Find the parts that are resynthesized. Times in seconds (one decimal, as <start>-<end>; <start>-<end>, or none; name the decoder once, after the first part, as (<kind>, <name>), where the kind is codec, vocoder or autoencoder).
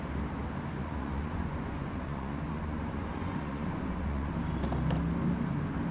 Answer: 0.8-4.3 (vocoder, Vocos)